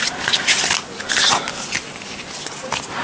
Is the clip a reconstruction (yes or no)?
no